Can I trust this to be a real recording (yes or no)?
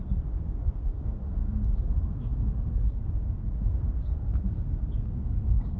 no